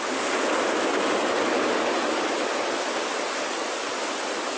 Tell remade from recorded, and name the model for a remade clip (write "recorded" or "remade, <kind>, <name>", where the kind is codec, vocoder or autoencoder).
recorded